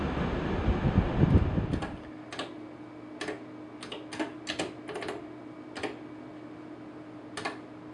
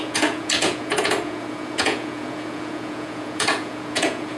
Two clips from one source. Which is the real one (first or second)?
first